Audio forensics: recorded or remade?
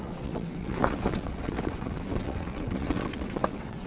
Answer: remade